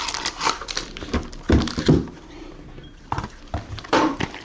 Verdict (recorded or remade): remade